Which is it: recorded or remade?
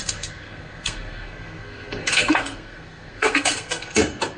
remade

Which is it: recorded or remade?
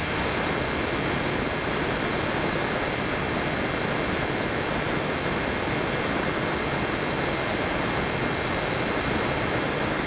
recorded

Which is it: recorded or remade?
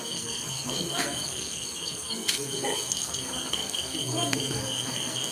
remade